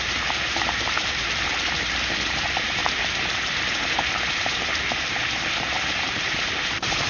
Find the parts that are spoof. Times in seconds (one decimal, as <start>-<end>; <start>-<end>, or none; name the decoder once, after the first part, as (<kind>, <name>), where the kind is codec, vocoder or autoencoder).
0.0-2.8 (vocoder, BigVGAN v2); 3.6-7.1